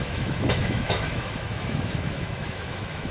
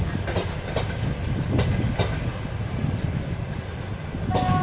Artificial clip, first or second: first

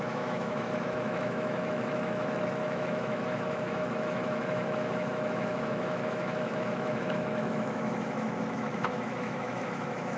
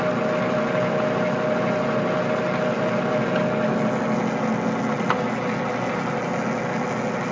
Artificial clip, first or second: first